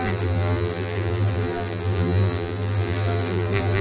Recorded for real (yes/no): no